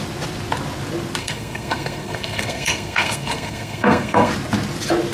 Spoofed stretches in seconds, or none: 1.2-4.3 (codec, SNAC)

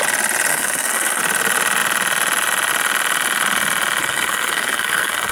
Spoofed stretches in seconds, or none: 0.5-1.2 (codec, SNAC); 4.0-5.3

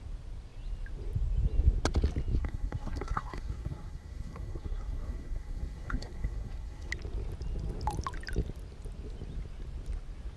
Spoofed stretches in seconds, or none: 2.4-6.9 (codec, SNAC)

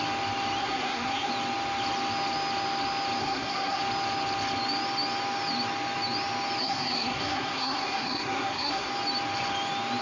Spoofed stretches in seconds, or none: 0.6-1.3 (codec, SNAC); 3.2-3.8; 6.6-8.9

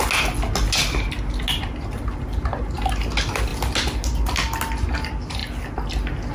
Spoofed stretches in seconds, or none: none

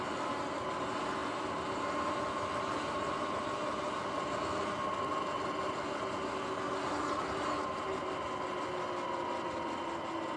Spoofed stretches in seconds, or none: none

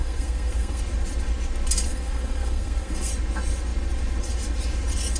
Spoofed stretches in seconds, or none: 0.0-0.8 (codec, SNAC); 1.9-3.1

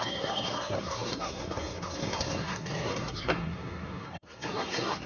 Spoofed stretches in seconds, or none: 0.0-5.1 (codec, SNAC)